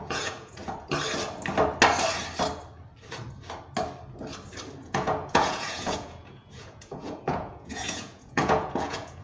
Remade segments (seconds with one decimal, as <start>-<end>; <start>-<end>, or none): 0.0-0.6; 4.8-9.2